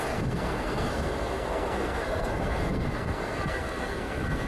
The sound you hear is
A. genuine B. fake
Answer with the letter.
B